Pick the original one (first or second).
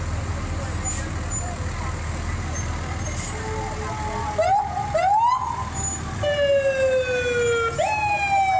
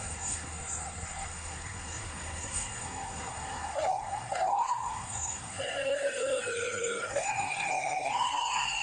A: first